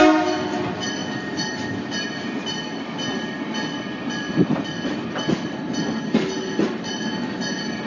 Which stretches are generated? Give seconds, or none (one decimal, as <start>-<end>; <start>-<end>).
none